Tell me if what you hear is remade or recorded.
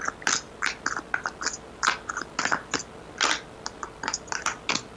recorded